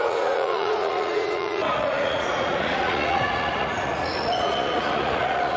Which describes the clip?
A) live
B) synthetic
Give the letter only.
B